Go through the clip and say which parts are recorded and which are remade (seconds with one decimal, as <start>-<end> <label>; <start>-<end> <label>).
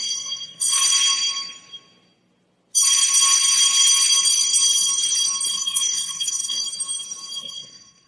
0.0-0.9 remade; 0.9-5.5 recorded; 5.5-6.6 remade; 6.6-7.4 recorded; 7.4-8.1 remade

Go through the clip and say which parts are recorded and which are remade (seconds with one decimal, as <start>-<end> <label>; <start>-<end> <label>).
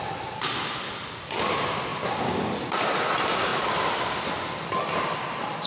0.0-5.7 recorded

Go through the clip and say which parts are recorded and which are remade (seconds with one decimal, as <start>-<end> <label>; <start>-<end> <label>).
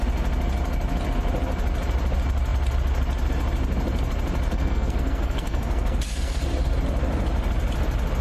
0.0-4.5 recorded; 4.5-6.4 remade; 6.4-8.2 recorded